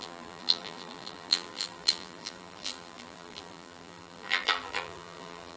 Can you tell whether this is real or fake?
fake